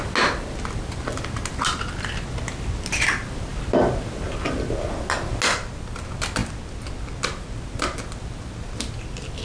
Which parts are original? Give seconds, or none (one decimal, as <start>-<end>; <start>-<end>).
0.0-9.4